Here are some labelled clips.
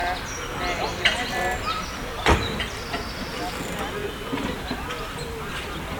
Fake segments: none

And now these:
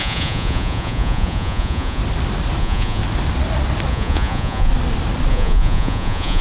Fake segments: 0.0-2.0 (vocoder, Vocos); 2.6-3.0; 3.9-4.7; 5.3-6.4

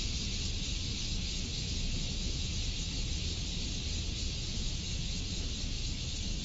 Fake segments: 1.0-2.5 (autoencoder, DAC-VAE); 4.5-6.4